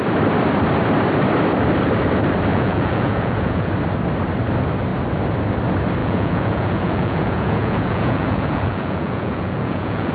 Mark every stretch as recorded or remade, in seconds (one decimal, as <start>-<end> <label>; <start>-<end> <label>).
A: 0.0-2.5 recorded; 2.5-3.7 remade; 3.7-6.0 recorded; 6.0-10.1 remade